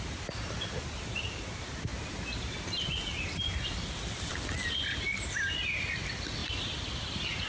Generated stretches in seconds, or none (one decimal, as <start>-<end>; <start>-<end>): none